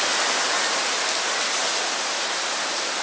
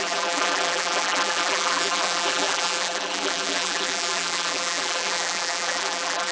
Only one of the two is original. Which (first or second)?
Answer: first